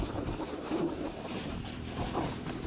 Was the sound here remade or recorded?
remade